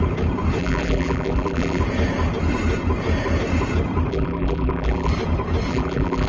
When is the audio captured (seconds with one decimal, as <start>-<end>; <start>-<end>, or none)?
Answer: 0.0-0.6; 1.8-4.1; 5.1-5.7